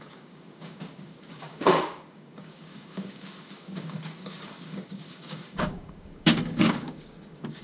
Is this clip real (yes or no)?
no